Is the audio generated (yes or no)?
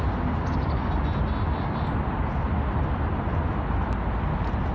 no